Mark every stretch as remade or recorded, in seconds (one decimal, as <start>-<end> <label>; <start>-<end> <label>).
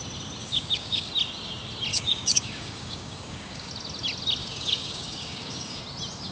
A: 0.0-0.4 recorded; 0.4-1.1 remade; 1.1-1.9 recorded; 1.9-3.7 remade; 3.7-4.4 recorded; 4.4-5.8 remade; 5.8-6.3 recorded